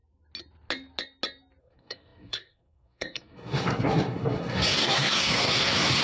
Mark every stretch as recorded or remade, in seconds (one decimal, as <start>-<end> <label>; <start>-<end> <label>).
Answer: 0.0-1.6 recorded; 1.6-6.0 remade